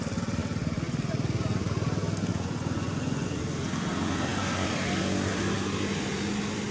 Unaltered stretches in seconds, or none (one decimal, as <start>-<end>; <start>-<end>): 0.0-2.3; 3.4-6.7